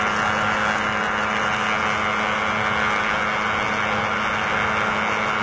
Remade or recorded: recorded